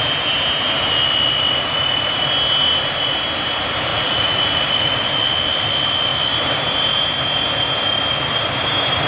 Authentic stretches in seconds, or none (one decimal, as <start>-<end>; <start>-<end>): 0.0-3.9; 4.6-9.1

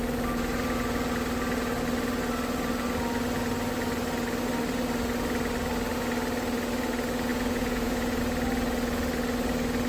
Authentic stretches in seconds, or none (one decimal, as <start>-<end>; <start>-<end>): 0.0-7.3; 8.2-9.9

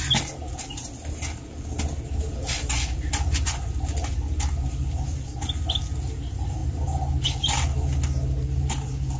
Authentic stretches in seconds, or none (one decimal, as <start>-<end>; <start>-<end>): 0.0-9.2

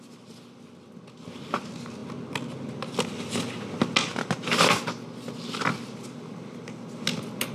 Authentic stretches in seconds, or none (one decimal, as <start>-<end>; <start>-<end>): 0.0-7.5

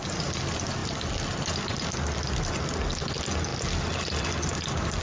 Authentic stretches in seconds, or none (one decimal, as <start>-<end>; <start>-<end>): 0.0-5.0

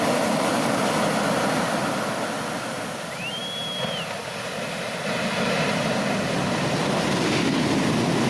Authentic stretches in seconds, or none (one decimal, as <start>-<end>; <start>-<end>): 0.0-8.3

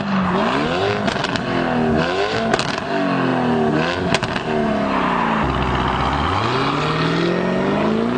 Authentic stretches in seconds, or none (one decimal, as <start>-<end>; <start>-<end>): 0.0-8.2